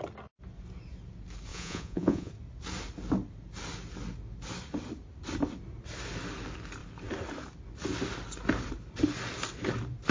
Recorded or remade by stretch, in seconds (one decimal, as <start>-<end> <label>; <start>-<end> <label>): 0.0-1.5 recorded; 1.5-2.3 remade; 2.3-10.1 recorded